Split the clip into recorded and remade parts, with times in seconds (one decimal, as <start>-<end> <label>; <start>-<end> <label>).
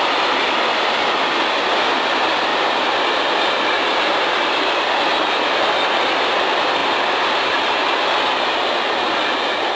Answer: 0.0-9.8 recorded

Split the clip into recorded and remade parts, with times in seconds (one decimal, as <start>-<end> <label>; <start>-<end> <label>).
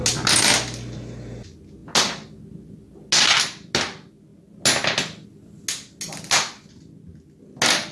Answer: 0.0-7.9 recorded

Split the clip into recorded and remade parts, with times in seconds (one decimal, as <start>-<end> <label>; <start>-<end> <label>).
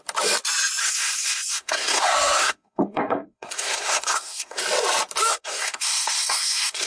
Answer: 0.0-0.8 recorded; 0.8-4.6 remade; 4.6-5.3 recorded; 5.3-6.9 remade